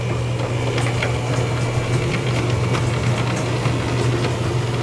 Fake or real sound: real